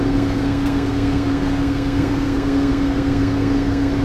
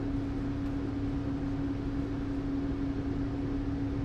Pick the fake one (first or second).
first